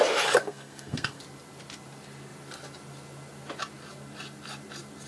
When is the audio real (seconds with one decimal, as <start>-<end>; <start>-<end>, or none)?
0.0-0.4; 1.2-5.1